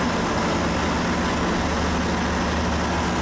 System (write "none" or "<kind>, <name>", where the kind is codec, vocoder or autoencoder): none